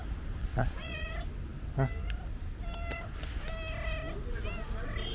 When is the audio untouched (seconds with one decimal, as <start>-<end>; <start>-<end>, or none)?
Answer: 0.0-0.4; 1.1-5.1